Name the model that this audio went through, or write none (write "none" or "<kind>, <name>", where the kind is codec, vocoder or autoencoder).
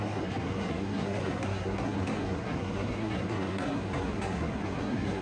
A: codec, SNAC